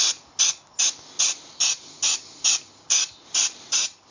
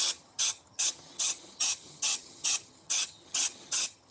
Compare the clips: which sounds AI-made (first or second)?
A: second